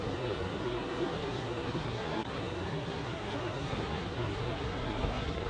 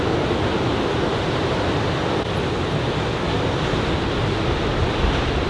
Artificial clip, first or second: first